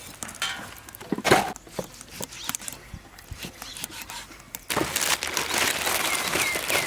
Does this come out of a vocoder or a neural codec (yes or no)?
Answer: no